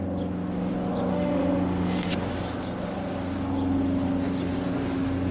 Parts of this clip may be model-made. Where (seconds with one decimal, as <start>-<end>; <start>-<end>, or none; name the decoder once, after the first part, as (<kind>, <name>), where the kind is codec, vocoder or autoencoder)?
1.1-2.1 (autoencoder, DAC-VAE)